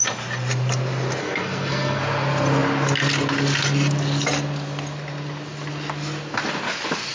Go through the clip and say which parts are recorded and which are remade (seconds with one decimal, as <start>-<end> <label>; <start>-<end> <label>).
0.0-1.2 recorded; 1.2-2.0 remade; 2.0-7.1 recorded